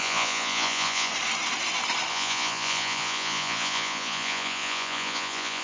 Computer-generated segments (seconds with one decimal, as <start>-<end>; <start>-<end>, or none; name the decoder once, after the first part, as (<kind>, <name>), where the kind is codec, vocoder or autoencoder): 0.0-1.1 (vocoder, Vocos); 2.1-5.6